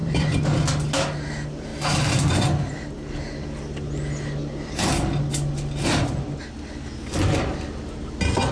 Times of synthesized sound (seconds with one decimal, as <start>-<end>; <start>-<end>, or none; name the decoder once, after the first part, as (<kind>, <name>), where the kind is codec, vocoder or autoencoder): 0.0-0.6 (vocoder, BigVGAN v2)